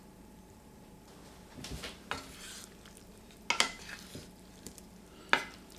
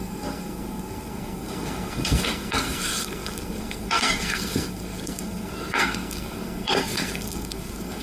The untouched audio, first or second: first